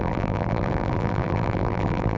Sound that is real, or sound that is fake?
fake